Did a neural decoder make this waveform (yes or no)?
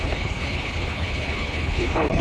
yes